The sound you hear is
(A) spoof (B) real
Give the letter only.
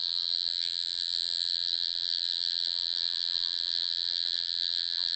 A